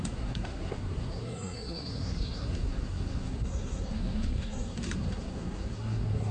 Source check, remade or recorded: remade